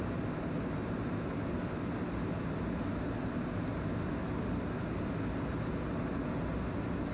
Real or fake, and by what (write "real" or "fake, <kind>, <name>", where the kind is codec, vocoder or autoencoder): real